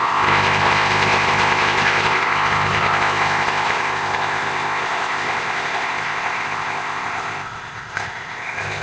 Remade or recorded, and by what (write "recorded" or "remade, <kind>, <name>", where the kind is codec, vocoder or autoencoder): remade, codec, ZipCodec